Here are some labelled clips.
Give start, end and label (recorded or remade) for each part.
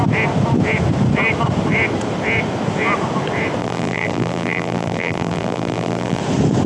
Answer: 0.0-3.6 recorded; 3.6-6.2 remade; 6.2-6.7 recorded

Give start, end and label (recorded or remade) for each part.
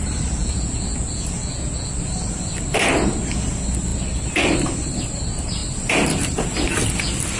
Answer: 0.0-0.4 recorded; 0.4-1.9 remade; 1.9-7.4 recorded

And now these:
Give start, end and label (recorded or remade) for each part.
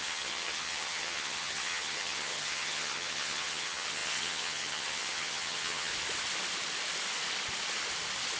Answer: 0.0-5.9 remade; 5.9-8.4 recorded